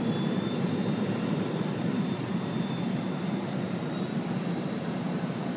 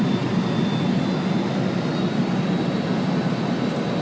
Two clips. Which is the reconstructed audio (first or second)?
first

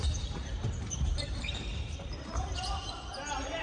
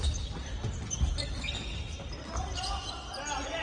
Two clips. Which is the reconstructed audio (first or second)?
first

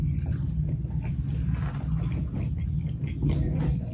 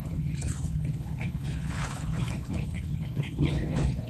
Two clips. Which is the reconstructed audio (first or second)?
second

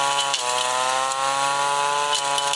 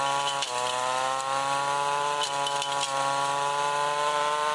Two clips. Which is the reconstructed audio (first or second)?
second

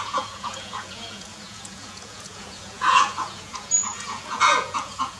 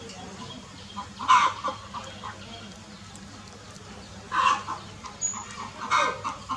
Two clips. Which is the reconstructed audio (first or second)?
first